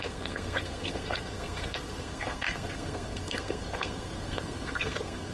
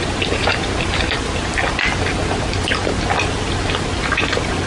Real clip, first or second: second